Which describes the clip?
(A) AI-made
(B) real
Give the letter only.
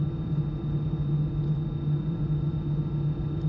B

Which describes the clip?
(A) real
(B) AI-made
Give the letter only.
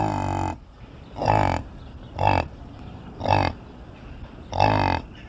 A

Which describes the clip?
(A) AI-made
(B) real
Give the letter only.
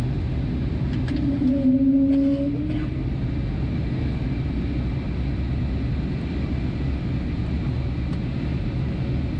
B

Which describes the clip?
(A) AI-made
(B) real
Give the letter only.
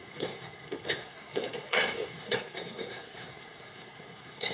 A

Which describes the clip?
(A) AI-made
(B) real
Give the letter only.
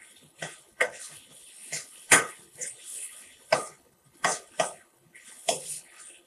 A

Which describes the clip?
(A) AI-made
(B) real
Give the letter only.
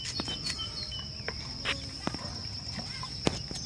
B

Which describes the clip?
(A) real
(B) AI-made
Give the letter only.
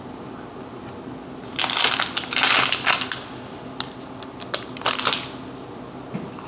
A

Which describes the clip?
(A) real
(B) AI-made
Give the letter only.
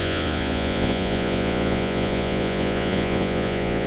B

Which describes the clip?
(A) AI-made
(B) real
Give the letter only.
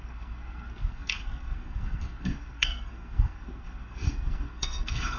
A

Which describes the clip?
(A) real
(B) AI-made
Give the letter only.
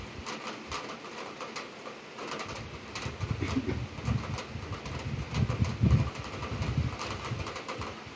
A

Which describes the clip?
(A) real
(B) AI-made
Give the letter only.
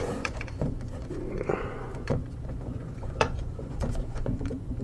B